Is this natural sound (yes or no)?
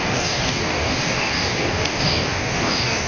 no